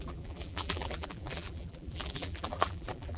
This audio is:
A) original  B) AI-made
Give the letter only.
B